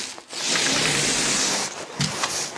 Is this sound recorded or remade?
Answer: recorded